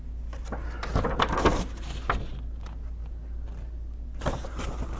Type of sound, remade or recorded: recorded